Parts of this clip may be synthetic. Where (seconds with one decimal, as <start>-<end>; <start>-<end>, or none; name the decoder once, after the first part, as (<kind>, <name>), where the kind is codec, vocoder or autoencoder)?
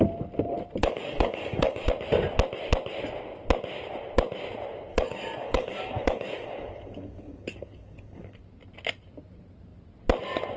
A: 0.8-1.9 (codec, DAC); 4.9-8.4